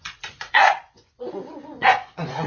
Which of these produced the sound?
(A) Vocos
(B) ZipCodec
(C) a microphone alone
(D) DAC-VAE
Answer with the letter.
A